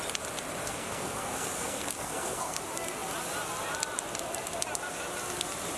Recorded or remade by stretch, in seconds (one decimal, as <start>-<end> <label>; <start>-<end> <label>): 0.0-0.6 recorded; 0.6-2.6 remade; 2.6-5.8 recorded